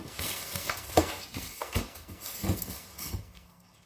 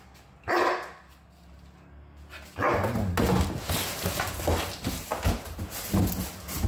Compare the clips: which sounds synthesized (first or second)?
first